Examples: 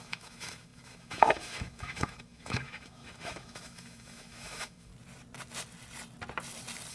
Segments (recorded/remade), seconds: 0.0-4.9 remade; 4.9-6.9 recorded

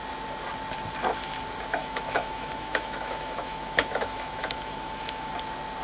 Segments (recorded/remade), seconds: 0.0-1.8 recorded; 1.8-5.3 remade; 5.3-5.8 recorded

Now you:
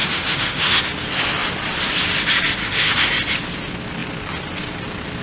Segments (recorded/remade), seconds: 0.0-0.8 remade; 0.8-2.6 recorded; 2.6-3.1 remade; 3.1-5.2 recorded